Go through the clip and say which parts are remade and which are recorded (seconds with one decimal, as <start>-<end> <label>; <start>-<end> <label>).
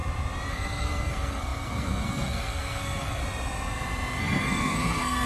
0.0-0.5 recorded; 0.5-3.2 remade; 3.2-4.2 recorded; 4.2-5.3 remade